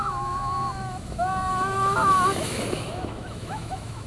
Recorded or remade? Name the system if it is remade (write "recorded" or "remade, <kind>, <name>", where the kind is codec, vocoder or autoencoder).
remade, autoencoder, DAC-VAE